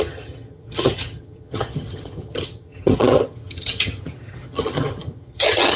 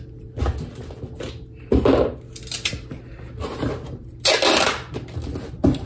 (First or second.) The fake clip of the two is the first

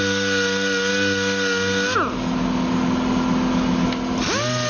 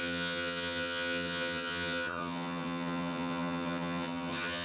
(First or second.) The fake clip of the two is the second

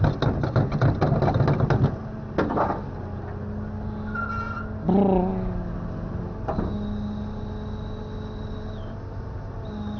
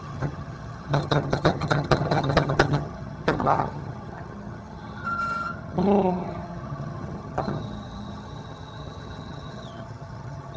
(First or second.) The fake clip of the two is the second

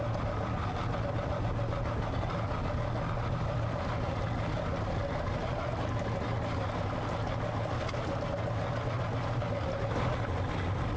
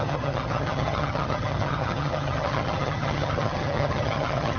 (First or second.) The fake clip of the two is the second